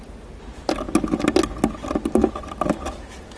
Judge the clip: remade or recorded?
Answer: recorded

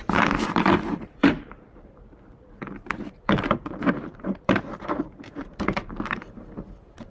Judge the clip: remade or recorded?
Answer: remade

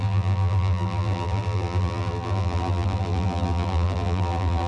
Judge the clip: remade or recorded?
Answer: remade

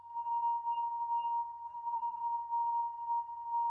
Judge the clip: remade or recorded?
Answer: remade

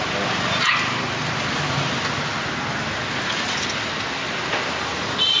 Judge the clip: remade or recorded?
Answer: recorded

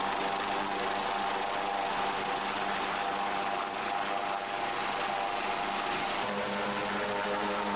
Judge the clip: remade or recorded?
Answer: recorded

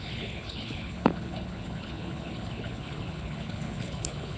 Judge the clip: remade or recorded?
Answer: remade